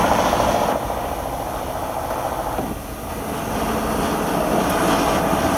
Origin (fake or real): real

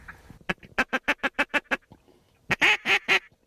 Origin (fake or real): real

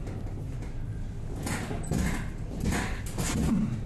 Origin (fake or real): real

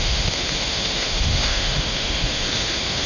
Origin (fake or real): fake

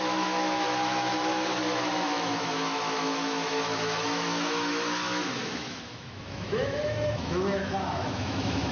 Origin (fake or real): fake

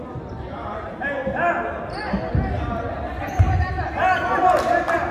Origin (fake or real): real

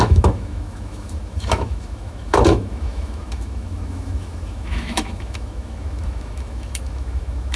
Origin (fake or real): fake